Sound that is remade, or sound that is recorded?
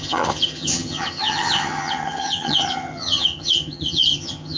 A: remade